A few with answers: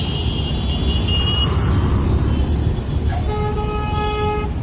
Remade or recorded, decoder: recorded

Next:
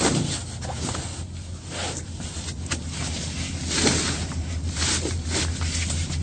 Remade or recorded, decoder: recorded